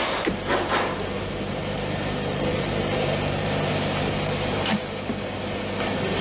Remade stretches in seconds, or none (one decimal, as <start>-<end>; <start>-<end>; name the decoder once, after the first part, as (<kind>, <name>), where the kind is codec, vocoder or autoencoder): 0.0-3.7 (vocoder, BigVGAN v2)